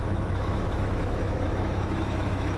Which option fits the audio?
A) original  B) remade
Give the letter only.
B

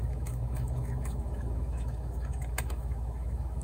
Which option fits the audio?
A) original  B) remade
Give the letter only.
B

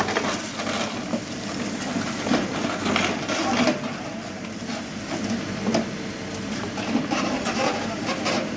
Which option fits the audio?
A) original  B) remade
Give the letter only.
A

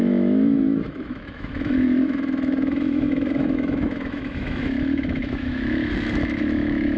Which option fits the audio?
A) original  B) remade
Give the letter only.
B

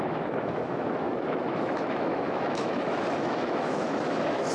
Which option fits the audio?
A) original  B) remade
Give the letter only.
B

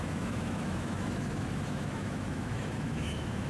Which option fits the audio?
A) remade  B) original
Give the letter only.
A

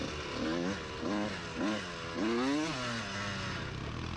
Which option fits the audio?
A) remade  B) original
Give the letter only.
B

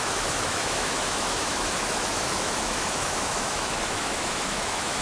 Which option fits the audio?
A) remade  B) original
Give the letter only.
A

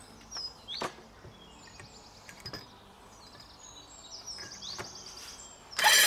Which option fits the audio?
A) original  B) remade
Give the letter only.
A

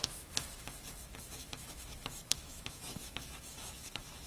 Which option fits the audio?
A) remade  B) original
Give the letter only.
A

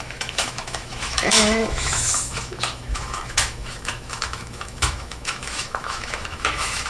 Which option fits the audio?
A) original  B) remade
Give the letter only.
B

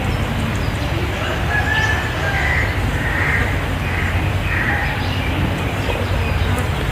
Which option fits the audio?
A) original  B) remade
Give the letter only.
A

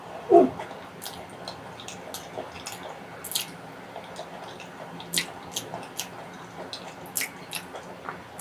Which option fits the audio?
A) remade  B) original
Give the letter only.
B